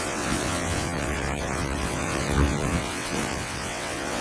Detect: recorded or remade remade